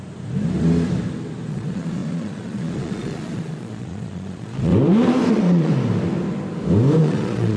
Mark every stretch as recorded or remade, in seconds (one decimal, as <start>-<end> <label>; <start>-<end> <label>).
0.0-1.5 recorded; 1.5-4.7 remade; 4.7-5.3 recorded; 5.3-5.7 remade; 5.7-7.0 recorded; 7.0-7.6 remade